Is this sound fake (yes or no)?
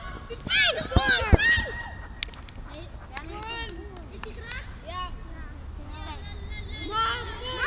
no